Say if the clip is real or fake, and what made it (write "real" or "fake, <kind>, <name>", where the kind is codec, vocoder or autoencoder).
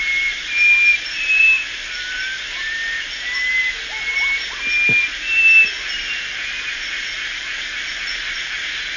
real